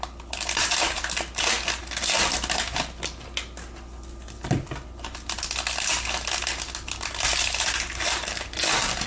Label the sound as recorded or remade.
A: recorded